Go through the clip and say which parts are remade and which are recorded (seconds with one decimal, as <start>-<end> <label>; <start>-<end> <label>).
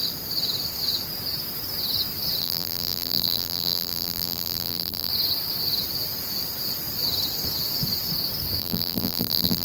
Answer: 0.0-2.4 recorded; 2.4-5.1 remade; 5.1-8.6 recorded; 8.6-9.6 remade